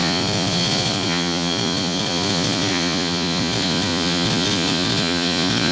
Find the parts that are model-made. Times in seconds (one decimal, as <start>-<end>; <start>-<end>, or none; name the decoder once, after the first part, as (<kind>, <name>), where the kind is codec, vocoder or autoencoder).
0.0-5.7 (vocoder, Vocos)